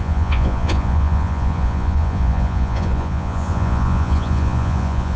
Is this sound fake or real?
fake